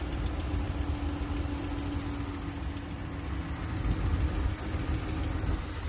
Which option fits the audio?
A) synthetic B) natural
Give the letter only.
B